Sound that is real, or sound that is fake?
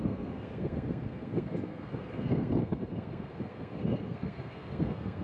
fake